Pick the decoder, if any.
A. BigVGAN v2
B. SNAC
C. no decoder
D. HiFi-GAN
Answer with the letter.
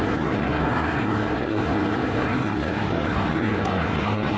B